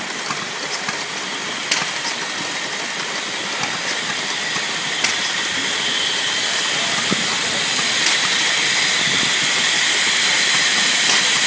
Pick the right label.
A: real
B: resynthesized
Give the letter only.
A